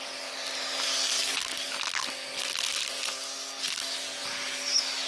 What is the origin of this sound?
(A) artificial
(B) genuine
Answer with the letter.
B